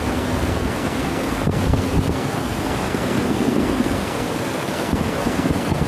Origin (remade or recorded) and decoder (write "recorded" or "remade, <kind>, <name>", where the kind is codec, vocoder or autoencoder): remade, codec, SNAC